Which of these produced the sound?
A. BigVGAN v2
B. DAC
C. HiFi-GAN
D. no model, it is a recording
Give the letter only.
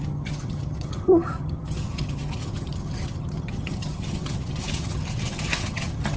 C